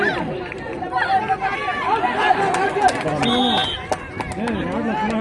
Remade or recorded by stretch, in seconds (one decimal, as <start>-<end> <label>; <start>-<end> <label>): 0.0-5.2 recorded